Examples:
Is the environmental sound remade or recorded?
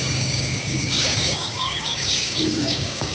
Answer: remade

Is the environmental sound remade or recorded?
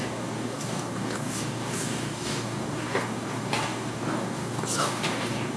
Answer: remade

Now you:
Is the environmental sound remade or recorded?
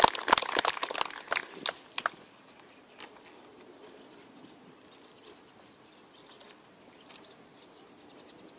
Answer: recorded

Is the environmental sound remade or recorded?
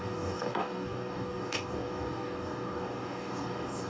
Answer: remade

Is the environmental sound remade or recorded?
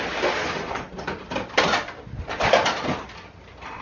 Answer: recorded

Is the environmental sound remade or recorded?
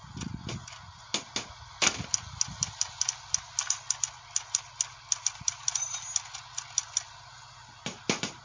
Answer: recorded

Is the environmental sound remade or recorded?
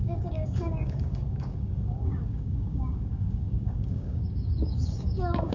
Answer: remade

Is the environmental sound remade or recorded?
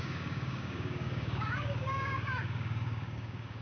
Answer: remade